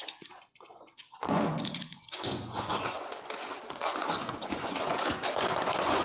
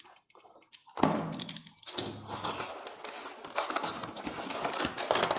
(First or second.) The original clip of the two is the second